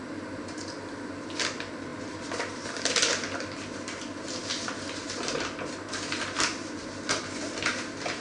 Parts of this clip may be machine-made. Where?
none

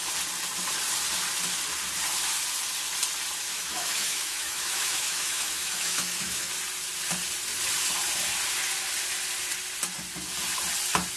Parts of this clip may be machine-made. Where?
3.5-6.5 (autoencoder, DAC-VAE)

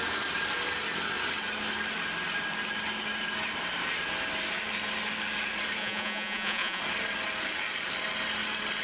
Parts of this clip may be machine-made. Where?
5.8-6.8 (vocoder, Vocos)

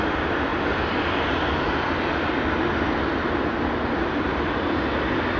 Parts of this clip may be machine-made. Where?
none

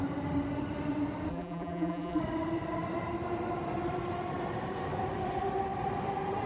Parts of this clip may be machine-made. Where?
1.3-2.2 (vocoder, BigVGAN v2)

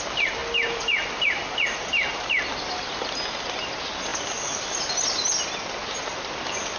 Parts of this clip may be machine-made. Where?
none